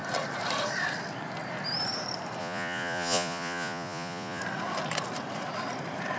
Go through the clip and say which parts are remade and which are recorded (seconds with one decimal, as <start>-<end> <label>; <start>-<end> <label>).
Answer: 0.0-2.4 recorded; 2.4-4.4 remade; 4.4-6.2 recorded